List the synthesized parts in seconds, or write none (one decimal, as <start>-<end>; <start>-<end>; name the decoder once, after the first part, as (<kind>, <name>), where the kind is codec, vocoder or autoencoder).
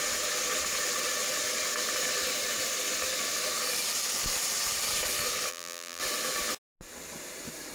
5.5-6.0 (vocoder, BigVGAN v2)